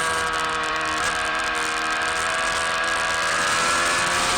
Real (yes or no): no